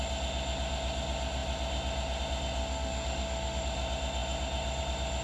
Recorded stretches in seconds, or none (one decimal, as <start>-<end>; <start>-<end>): 0.0-2.6; 3.6-5.2

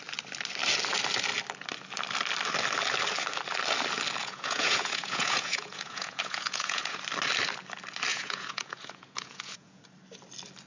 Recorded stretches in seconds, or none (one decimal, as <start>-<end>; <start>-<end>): 0.0-4.2; 7.0-8.1; 9.8-10.7

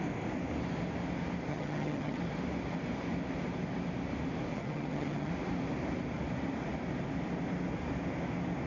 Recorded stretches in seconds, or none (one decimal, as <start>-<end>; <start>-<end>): 0.0-1.5; 2.2-4.5; 5.3-8.7